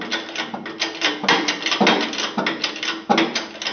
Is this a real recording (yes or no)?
yes